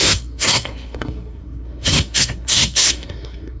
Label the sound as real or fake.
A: fake